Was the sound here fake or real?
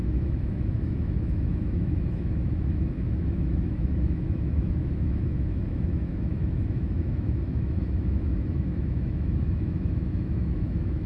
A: fake